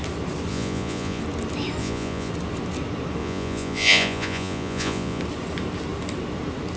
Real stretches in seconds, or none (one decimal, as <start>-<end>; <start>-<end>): 0.0-0.5; 1.2-1.8; 2.3-3.2; 5.2-6.8